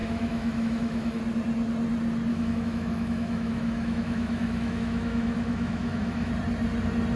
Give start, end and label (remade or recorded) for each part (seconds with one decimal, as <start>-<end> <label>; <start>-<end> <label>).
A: 0.0-1.2 remade; 1.2-2.3 recorded; 2.3-6.3 remade; 6.3-7.2 recorded